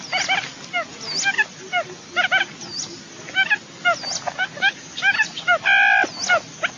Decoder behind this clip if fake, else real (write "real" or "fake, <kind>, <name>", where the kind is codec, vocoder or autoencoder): real